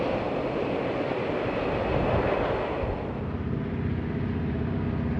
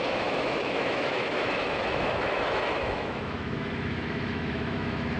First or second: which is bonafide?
first